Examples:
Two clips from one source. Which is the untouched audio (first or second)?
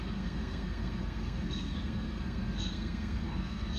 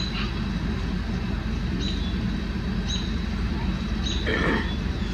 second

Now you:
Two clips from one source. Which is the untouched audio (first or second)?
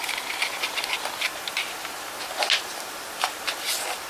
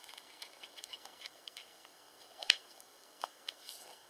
first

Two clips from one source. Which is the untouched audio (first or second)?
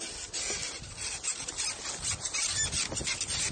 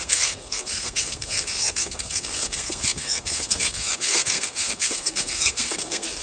first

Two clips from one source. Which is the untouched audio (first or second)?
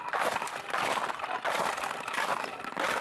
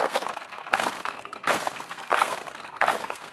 first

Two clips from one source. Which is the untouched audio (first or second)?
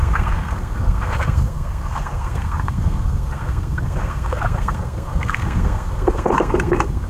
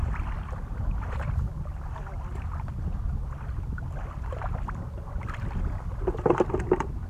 second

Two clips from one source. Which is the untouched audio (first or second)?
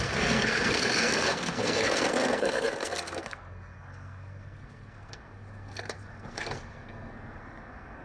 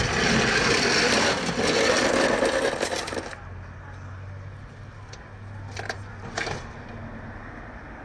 second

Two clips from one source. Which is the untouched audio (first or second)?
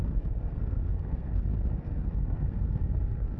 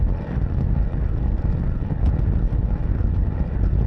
second